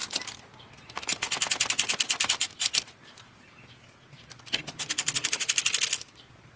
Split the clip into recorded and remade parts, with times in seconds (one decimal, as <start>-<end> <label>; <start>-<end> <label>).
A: 0.0-1.1 recorded; 1.1-1.7 remade; 1.7-6.6 recorded